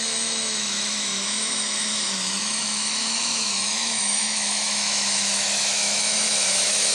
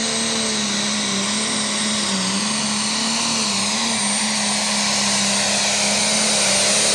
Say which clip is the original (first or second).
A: second